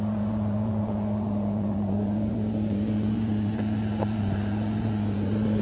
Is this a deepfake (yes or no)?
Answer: yes